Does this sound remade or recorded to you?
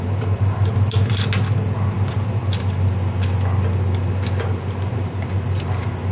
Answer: recorded